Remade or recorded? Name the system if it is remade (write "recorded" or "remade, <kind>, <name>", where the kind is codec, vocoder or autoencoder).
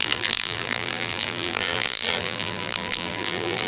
remade, vocoder, BigVGAN v2